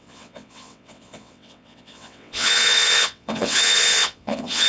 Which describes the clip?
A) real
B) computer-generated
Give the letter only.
B